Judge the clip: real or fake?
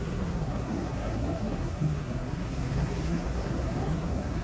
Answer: fake